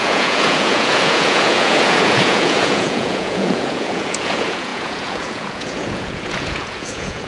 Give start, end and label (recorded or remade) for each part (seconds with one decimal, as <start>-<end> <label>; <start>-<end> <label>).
0.0-7.3 remade